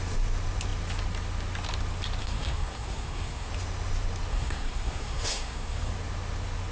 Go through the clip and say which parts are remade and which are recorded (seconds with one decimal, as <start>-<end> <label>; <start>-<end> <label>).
0.0-2.2 recorded; 2.2-3.5 remade; 3.5-4.3 recorded; 4.3-5.9 remade; 5.9-6.7 recorded

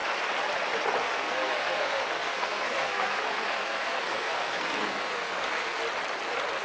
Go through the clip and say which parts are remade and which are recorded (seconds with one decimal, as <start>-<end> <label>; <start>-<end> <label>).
0.0-1.0 recorded; 1.0-5.8 remade; 5.8-6.6 recorded

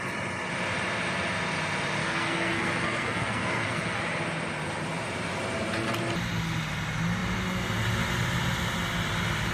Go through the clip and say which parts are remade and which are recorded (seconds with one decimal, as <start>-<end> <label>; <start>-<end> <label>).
0.0-2.0 recorded; 2.0-4.0 remade; 4.0-9.5 recorded

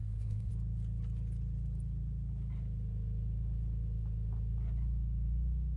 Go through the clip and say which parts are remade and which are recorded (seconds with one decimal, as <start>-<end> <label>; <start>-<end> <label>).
0.0-0.5 remade; 0.5-5.8 recorded

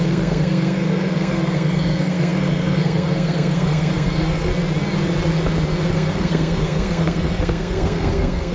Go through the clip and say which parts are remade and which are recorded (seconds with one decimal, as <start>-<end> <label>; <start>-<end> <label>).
0.0-4.5 remade; 4.5-5.9 recorded; 5.9-8.5 remade

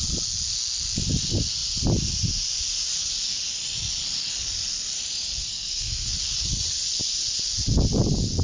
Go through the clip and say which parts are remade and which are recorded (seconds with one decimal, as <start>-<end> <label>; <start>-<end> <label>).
0.0-5.4 recorded; 5.4-6.1 remade; 6.1-8.4 recorded